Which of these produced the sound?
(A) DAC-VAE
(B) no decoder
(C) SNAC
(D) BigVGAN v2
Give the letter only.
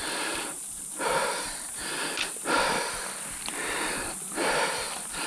D